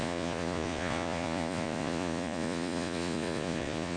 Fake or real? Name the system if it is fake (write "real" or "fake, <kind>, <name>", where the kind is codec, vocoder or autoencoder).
fake, vocoder, Vocos